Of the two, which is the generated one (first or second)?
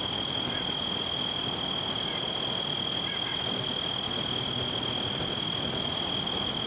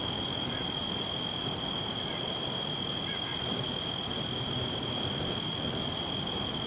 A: second